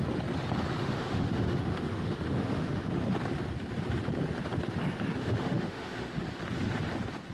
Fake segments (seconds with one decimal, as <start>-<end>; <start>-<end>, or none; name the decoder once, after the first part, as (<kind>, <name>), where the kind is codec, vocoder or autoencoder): 0.8-3.0 (autoencoder, DAC-VAE); 5.2-6.2